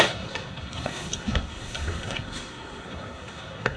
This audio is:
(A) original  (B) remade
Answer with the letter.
B